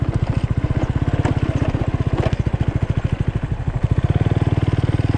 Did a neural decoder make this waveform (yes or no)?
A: no